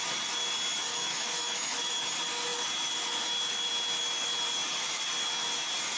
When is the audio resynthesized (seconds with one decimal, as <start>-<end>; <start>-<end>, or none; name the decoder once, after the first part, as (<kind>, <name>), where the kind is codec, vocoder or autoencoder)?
0.9-1.9 (autoencoder, DAC-VAE)